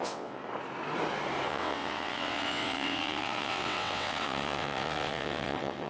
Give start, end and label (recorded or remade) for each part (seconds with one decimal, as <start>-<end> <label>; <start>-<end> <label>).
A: 0.0-0.4 remade; 0.4-1.5 recorded; 1.5-5.9 remade